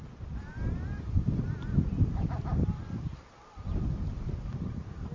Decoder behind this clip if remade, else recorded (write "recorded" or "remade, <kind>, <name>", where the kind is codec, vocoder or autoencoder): recorded